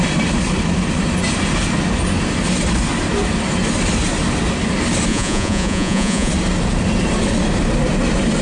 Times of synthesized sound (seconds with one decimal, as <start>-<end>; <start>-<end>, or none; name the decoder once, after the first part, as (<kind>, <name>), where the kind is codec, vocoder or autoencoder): 5.1-6.3 (vocoder, Vocos)